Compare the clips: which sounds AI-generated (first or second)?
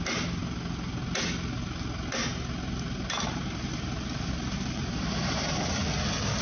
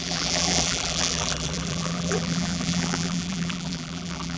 second